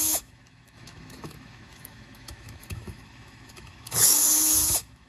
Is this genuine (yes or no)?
no